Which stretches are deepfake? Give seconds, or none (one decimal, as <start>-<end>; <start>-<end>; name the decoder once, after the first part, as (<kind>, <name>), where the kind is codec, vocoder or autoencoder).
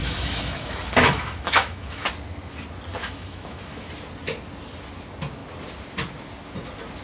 0.0-2.1 (autoencoder, DAC-VAE); 3.0-3.9